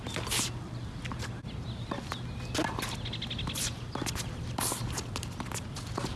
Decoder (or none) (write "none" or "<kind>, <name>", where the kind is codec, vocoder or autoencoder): none